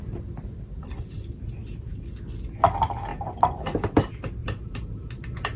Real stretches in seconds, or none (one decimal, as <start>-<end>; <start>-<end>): 0.0-1.6; 2.2-3.1; 4.0-4.4; 5.1-5.6